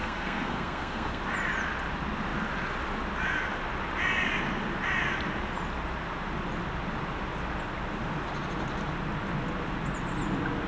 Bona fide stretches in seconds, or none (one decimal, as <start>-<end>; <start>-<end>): 1.2-10.7